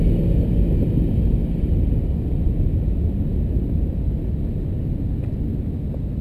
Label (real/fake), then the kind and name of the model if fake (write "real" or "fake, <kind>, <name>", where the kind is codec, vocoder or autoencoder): real